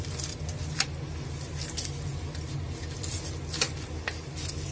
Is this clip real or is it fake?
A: real